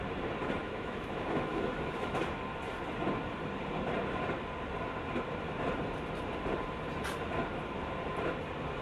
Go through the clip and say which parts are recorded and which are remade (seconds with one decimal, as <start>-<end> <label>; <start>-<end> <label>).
0.0-0.6 recorded; 0.6-2.2 remade; 2.2-8.8 recorded